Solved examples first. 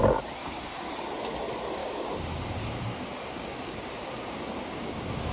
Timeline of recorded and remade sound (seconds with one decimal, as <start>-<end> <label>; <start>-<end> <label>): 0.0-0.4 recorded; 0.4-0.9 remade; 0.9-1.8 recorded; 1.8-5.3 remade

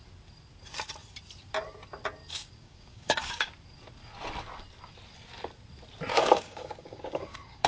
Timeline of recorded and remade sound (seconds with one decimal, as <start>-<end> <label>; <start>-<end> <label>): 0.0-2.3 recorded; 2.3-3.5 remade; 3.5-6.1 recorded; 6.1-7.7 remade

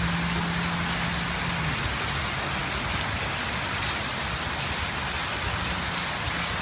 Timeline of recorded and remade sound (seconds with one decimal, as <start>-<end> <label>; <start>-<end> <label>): 0.0-6.6 recorded

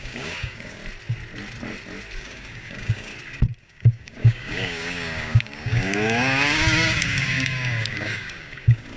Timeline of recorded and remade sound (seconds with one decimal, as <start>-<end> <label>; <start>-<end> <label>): 0.0-0.8 remade; 0.8-2.2 recorded; 2.2-3.1 remade; 3.1-3.6 recorded; 3.6-9.0 remade

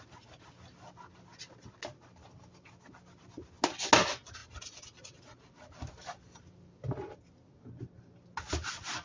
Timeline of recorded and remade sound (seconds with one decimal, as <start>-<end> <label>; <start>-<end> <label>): 0.0-9.0 recorded

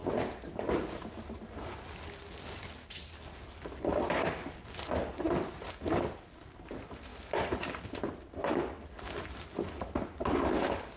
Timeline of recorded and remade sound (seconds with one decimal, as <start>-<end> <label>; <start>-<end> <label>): 0.0-11.0 recorded

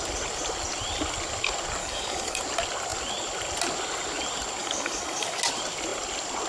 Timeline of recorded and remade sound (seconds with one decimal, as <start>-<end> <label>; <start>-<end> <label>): 0.0-1.8 recorded; 1.8-2.4 remade; 2.4-4.6 recorded; 4.6-5.4 remade; 5.4-6.5 recorded

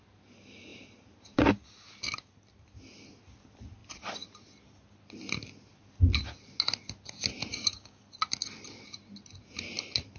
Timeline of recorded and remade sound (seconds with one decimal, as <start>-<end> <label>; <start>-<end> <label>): 0.0-7.5 recorded; 7.5-8.0 remade; 8.0-10.2 recorded